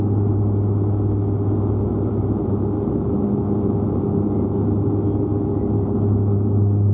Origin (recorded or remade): recorded